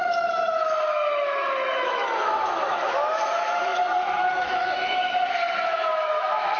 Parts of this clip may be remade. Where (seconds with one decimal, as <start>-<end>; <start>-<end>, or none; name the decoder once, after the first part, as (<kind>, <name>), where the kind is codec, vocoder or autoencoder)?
0.0-6.6 (autoencoder, DAC-VAE)